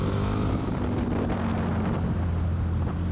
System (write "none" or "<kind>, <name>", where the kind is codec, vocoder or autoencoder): none